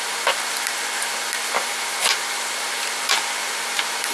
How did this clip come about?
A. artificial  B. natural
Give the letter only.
B